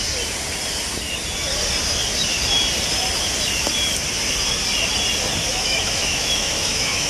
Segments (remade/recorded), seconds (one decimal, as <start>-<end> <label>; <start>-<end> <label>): 0.0-5.4 recorded; 5.4-7.1 remade